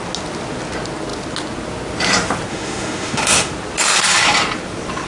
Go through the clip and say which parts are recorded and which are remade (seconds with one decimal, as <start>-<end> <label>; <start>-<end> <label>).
0.0-2.5 recorded; 2.5-3.5 remade; 3.5-5.1 recorded